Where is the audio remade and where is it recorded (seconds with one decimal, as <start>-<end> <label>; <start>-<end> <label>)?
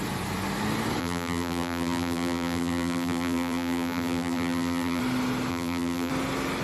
0.0-1.0 recorded; 1.0-5.0 remade; 5.0-5.5 recorded; 5.5-6.1 remade; 6.1-6.6 recorded